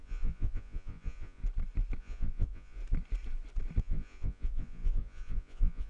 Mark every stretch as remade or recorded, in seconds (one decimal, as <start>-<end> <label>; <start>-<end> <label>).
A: 0.0-1.4 remade; 1.4-2.0 recorded; 2.0-2.8 remade; 2.8-3.8 recorded; 3.8-5.9 remade